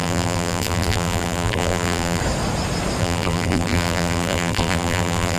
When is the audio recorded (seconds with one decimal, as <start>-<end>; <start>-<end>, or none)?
2.2-3.0